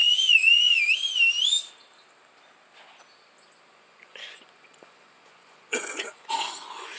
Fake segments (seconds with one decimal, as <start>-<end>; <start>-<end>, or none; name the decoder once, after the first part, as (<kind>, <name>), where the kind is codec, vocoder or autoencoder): 0.0-0.8 (vocoder, Vocos); 3.7-7.0